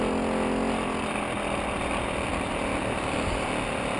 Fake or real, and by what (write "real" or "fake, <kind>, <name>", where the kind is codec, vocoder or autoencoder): real